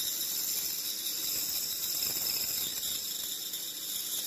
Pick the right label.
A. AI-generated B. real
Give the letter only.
B